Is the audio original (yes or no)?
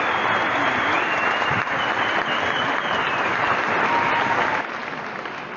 yes